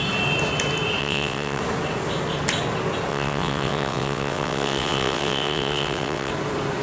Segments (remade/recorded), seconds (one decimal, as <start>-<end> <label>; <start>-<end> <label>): 0.0-1.0 recorded; 1.0-1.6 remade; 1.6-3.1 recorded; 3.1-6.3 remade; 6.3-6.8 recorded